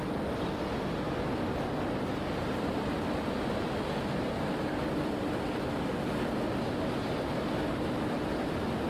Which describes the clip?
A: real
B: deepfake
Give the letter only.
A